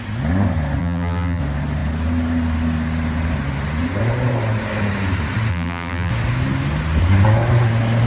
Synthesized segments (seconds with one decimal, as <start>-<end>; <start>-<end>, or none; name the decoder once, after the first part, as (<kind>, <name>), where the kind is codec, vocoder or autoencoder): 0.8-1.4 (vocoder, BigVGAN v2); 5.5-6.1